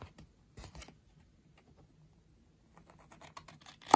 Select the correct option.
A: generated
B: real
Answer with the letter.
B